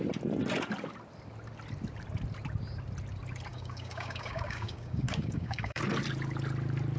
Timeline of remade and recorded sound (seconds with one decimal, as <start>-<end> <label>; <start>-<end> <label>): 0.0-3.5 recorded; 3.5-5.8 remade; 5.8-7.0 recorded